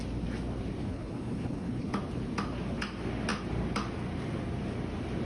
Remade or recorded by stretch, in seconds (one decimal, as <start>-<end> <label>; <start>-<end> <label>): 0.0-0.8 recorded; 0.8-1.9 remade; 1.9-5.2 recorded